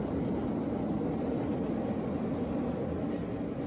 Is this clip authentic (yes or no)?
yes